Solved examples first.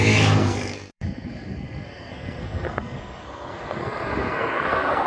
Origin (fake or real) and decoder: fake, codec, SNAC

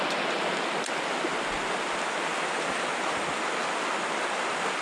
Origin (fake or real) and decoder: real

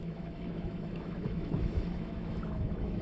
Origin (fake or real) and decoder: fake, autoencoder, DAC-VAE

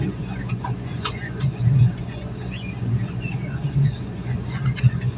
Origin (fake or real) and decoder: fake, vocoder, Vocos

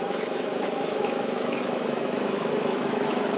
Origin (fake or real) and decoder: fake, autoencoder, DAC-VAE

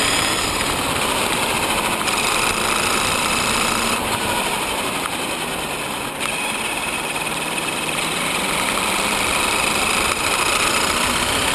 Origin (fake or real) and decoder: fake, vocoder, BigVGAN v2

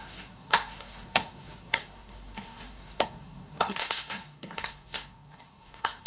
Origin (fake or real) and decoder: fake, codec, SNAC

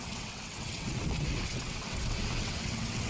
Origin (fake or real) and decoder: fake, vocoder, WaveNeXt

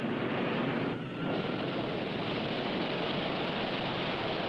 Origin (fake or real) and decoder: real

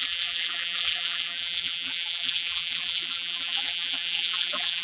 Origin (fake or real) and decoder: fake, vocoder, BigVGAN v2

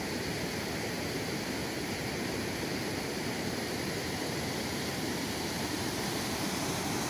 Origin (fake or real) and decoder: fake, vocoder, BigVGAN v2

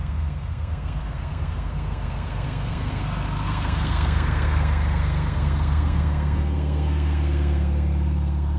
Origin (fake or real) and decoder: fake, codec, SNAC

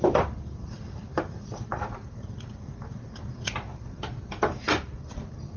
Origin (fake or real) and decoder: fake, vocoder, BigVGAN v2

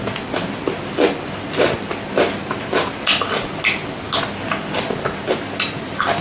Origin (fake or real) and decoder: real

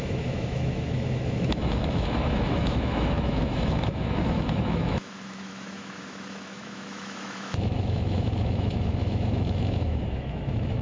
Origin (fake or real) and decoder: fake, autoencoder, DAC-VAE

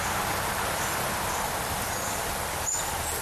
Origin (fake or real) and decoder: real